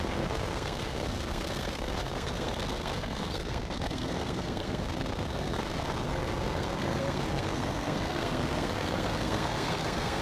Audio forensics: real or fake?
fake